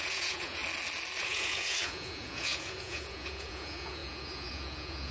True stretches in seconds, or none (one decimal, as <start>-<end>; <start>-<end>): 0.6-1.2